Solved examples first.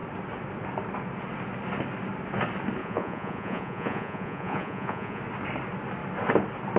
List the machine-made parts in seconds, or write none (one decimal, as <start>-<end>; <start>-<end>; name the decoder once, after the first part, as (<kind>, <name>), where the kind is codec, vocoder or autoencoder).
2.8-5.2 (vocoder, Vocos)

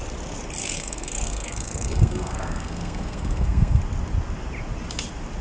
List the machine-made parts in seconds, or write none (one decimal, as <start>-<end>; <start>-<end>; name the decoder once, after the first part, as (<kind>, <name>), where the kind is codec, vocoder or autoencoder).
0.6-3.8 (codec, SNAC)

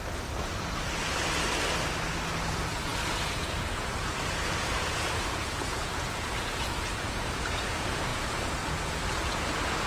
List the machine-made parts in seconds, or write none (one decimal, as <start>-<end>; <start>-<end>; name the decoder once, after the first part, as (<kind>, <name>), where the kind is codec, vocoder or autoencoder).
2.5-9.9 (vocoder, Vocos)

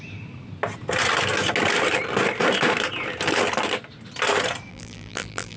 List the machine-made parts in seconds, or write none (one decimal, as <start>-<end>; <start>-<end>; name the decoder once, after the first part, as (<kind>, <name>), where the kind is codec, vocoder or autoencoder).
4.7-5.6 (vocoder, BigVGAN v2)